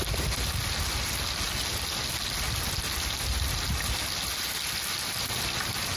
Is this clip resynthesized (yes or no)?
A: no